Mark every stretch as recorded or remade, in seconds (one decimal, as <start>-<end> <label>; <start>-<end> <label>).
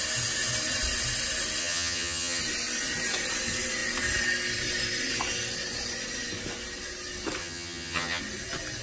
0.0-1.6 recorded; 1.6-2.4 remade; 2.4-7.4 recorded; 7.4-8.2 remade; 8.2-8.8 recorded